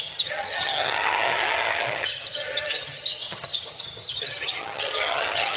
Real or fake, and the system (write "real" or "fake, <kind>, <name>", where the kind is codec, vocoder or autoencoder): fake, vocoder, HiFi-GAN